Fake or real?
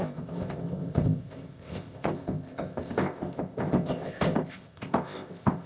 fake